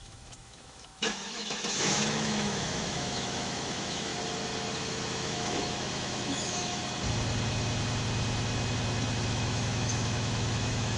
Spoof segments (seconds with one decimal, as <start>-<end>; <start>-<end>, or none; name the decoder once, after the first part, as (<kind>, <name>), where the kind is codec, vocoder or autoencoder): 0.0-4.1 (autoencoder, DAC-VAE); 4.8-6.8; 9.3-11.0